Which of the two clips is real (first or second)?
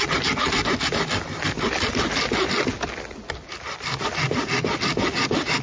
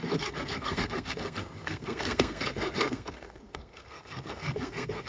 first